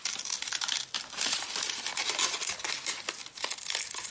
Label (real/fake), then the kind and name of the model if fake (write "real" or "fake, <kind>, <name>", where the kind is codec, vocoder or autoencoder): real